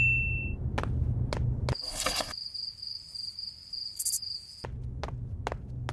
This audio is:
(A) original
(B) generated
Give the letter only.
A